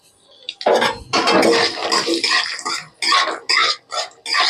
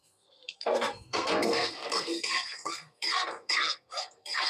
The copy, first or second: second